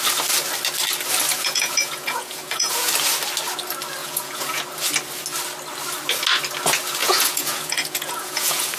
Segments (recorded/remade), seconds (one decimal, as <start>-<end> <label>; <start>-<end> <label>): 0.0-1.3 recorded; 1.3-2.9 remade; 2.9-4.0 recorded; 4.0-4.6 remade; 4.6-7.0 recorded; 7.0-8.8 remade